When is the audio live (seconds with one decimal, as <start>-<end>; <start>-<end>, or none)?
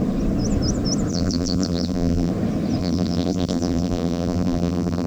0.0-1.1; 2.3-2.8